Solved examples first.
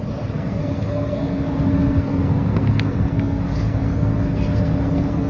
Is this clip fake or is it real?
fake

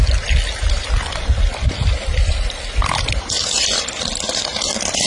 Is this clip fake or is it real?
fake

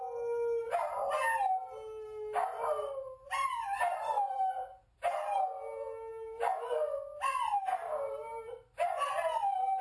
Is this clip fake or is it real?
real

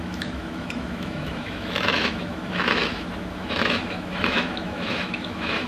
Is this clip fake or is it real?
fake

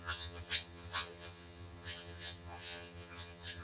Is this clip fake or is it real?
fake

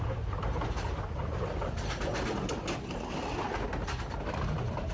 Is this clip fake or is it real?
real